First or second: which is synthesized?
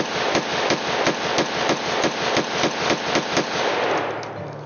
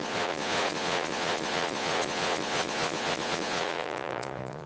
second